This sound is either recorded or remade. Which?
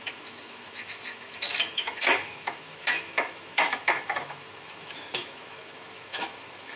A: remade